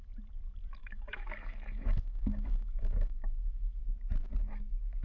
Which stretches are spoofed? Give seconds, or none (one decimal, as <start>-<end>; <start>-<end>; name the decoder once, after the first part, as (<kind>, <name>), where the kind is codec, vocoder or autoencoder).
0.8-3.8 (autoencoder, DAC-VAE)

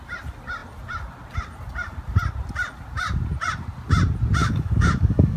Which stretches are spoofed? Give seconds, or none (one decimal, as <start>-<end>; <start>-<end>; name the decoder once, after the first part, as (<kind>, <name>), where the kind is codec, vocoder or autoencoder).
4.4-5.4 (codec, DAC)

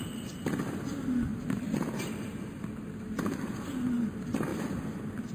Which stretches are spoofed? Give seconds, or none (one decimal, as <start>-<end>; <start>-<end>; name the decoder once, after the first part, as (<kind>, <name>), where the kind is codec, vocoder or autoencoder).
none

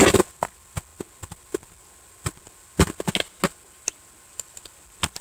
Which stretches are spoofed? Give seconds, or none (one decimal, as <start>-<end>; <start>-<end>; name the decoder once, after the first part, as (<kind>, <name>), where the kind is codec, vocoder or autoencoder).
none

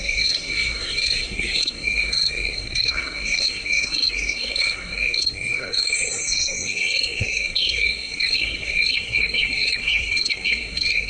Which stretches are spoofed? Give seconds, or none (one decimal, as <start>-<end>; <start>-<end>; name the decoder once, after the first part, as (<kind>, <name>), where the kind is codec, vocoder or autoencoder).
0.0-11.1 (codec, SNAC)

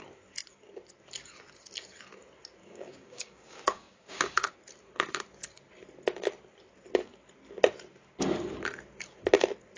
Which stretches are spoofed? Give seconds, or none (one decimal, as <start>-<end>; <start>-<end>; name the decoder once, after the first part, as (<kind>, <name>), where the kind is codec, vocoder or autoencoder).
2.6-4.5 (codec, DAC)